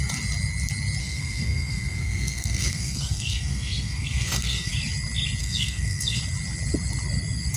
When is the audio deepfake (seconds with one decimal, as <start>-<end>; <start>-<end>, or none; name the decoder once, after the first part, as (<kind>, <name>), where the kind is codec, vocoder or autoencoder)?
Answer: 1.0-4.7 (codec, SNAC); 5.4-6.2